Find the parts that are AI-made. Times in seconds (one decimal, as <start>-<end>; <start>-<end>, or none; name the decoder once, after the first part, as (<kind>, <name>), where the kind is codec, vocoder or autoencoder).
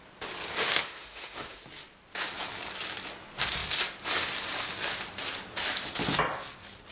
0.6-1.6 (autoencoder, DAC-VAE)